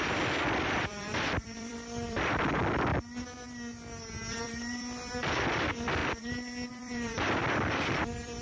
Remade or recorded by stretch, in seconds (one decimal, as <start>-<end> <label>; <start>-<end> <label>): 0.0-2.9 remade; 2.9-4.3 recorded; 4.3-8.4 remade

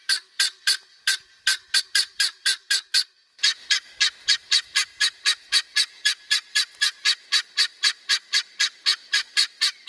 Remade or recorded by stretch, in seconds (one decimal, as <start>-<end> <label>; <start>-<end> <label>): 0.0-1.8 recorded; 1.8-3.5 remade; 3.5-8.6 recorded; 8.6-9.9 remade

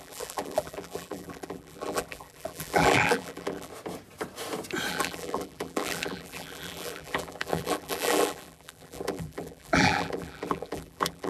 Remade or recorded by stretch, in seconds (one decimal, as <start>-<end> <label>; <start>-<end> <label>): 0.0-3.7 remade; 3.7-4.9 recorded; 4.9-11.3 remade

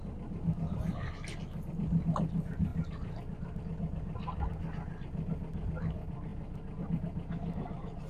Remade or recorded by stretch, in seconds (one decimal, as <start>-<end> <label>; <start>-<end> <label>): 0.0-8.1 recorded

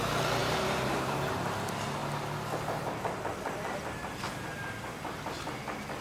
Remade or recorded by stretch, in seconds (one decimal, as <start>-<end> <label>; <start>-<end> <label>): 0.0-0.4 recorded; 0.4-1.3 remade; 1.3-6.0 recorded

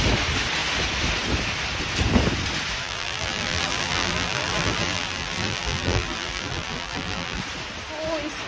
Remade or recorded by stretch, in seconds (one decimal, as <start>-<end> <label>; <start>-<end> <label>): 0.0-2.8 recorded; 2.8-7.4 remade; 7.4-8.5 recorded